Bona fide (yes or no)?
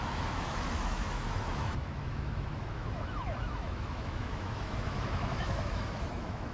no